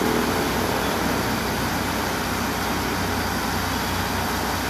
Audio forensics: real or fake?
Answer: real